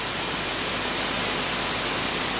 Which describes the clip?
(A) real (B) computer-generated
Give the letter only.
A